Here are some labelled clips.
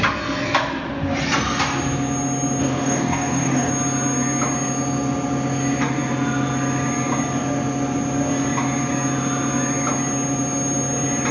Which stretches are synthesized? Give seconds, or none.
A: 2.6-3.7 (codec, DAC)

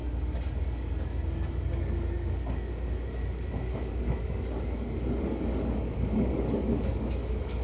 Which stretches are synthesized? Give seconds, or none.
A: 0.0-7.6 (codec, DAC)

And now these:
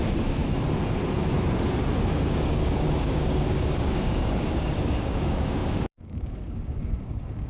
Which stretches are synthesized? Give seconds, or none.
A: 0.0-0.4 (codec, DAC); 2.0-7.5

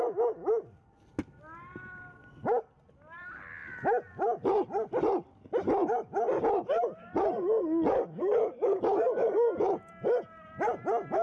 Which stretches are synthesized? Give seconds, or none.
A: 8.2-9.9 (codec, DAC)

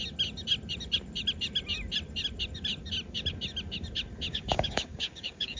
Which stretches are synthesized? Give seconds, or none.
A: 4.3-5.6 (codec, DAC)